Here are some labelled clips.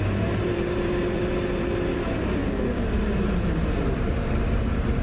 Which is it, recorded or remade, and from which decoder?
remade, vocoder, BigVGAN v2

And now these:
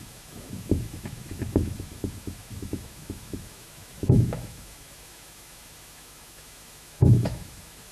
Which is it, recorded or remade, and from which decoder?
remade, autoencoder, DAC-VAE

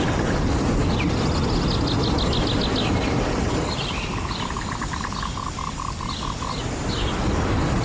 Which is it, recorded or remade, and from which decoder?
recorded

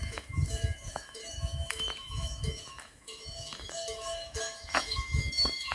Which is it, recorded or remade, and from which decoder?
remade, autoencoder, DAC-VAE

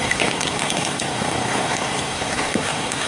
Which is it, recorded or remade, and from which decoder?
remade, codec, SNAC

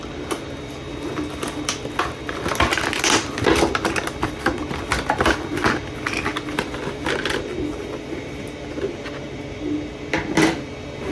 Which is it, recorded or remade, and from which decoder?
recorded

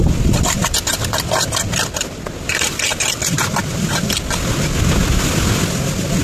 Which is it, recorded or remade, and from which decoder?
recorded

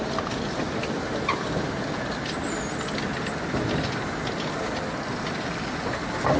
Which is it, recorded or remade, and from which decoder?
recorded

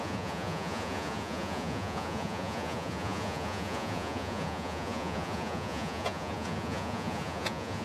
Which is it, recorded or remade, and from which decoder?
remade, vocoder, Vocos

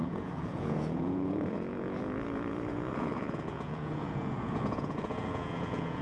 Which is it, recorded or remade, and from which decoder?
remade, vocoder, Vocos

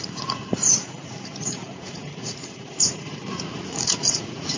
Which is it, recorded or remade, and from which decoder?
remade, vocoder, Vocos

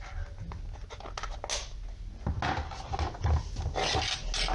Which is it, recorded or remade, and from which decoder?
recorded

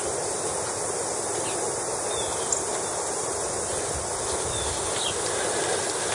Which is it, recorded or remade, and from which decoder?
recorded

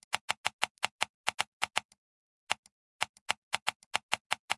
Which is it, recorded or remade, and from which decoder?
recorded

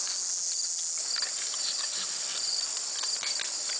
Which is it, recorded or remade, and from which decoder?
recorded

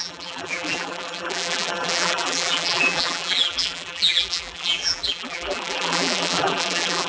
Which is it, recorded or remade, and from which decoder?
remade, vocoder, BigVGAN v2